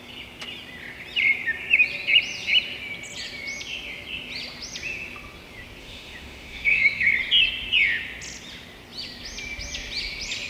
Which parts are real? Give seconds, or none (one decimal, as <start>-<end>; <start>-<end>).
0.0-5.8; 7.1-10.5